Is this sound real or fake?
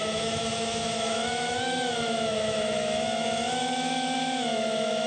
fake